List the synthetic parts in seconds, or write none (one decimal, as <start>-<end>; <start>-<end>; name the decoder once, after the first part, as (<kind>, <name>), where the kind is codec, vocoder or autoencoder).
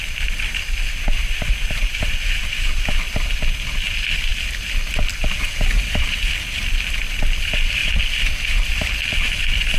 none